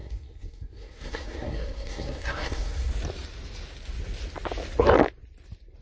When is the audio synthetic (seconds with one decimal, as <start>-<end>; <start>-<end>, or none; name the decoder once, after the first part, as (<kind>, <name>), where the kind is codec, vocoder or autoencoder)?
0.0-2.9 (codec, SNAC)